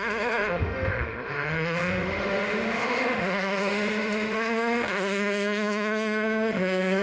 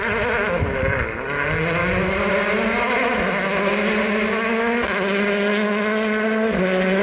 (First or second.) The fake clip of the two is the first